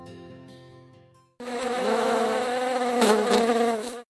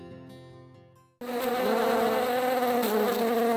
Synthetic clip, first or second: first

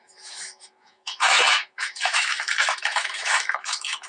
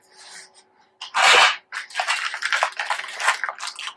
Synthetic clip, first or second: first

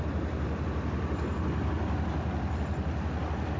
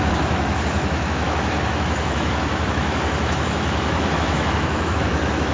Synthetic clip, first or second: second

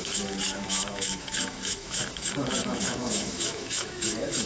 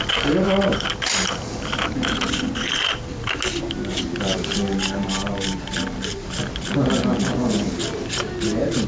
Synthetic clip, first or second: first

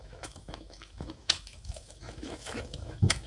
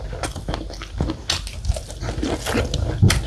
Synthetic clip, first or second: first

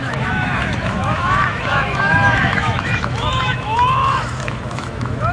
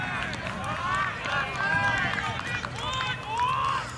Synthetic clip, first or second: first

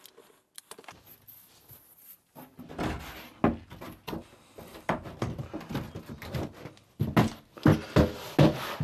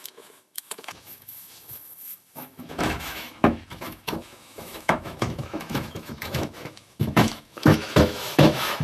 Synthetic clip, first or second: second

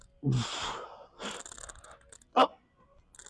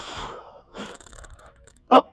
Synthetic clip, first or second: second